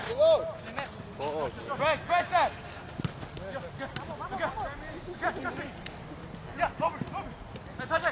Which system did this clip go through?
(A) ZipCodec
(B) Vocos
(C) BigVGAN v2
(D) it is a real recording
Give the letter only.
D